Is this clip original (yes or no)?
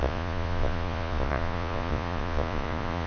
no